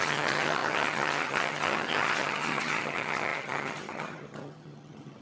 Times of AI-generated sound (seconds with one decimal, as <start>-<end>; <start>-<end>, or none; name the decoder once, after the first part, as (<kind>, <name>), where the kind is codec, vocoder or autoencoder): 0.0-5.2 (vocoder, HiFi-GAN)